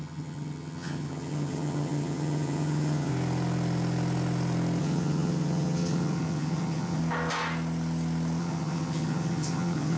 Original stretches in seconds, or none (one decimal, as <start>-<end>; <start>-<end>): 3.1-4.8; 7.0-8.4

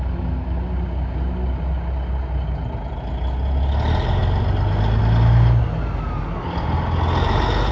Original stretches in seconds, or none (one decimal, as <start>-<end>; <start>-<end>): 0.0-7.7

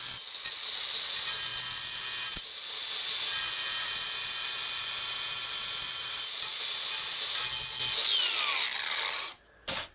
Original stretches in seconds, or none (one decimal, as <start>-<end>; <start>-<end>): 0.0-9.9

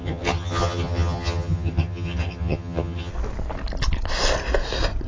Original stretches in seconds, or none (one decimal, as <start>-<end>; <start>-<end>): 3.1-5.1